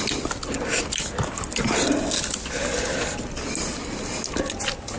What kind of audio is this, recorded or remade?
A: recorded